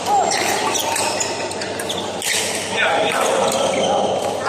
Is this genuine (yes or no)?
yes